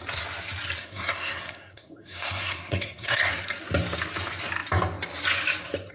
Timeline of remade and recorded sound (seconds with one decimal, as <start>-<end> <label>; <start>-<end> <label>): 0.0-0.8 recorded; 0.8-3.3 remade; 3.3-5.9 recorded